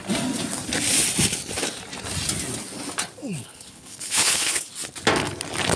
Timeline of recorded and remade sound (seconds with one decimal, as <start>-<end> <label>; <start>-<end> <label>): 0.0-3.4 recorded; 3.4-4.7 remade; 4.7-5.8 recorded